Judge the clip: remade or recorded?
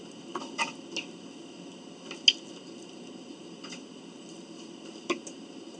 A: recorded